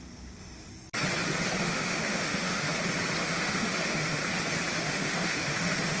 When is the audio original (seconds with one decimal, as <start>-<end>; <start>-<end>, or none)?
0.7-1.6; 2.7-3.2; 4.2-4.7

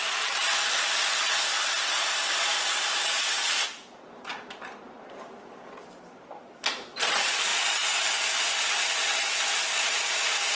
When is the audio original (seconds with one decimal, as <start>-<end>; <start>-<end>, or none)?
7.5-8.4; 9.2-9.9

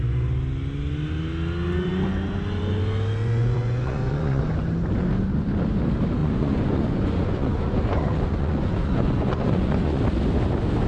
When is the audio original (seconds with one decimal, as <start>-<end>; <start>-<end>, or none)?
0.0-3.2; 4.4-6.2; 10.0-10.9

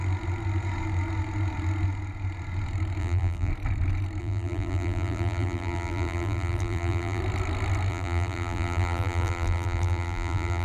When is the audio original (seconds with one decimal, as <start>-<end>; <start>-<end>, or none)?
0.0-3.0; 3.5-4.2; 7.2-7.9

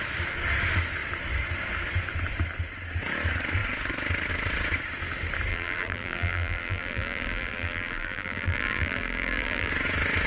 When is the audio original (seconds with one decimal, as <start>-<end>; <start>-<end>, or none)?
0.0-5.5; 9.7-10.3

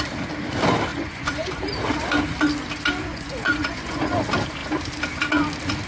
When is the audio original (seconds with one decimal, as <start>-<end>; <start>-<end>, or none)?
0.0-0.9; 1.6-3.1; 4.1-5.9